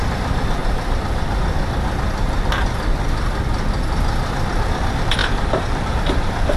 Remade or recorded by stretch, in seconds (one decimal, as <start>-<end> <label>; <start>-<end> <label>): 0.0-0.6 recorded; 0.6-1.3 remade; 1.3-5.2 recorded; 5.2-6.6 remade